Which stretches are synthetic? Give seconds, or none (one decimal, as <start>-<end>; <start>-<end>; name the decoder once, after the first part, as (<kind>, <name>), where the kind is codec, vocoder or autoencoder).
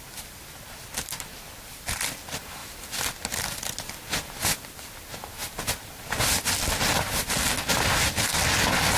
none